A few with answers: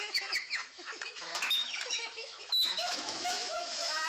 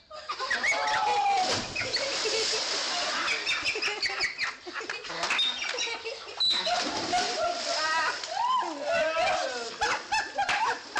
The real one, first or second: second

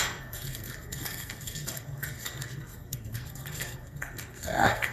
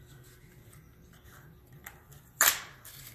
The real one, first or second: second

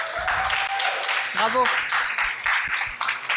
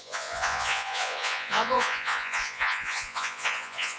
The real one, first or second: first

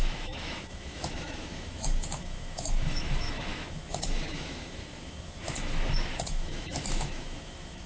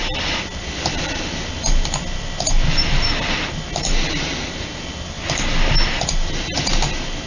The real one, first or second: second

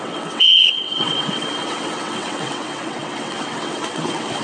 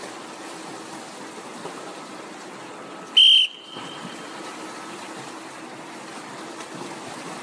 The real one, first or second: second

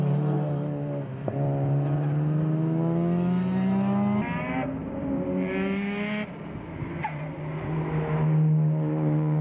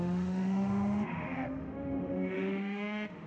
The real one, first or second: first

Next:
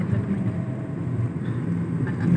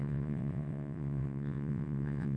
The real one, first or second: first